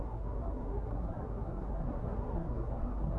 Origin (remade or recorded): remade